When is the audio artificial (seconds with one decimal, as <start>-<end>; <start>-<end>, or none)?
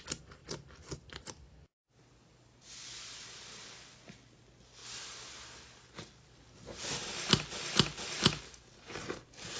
none